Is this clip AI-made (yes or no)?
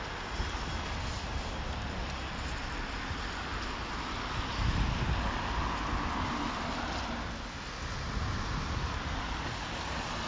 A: no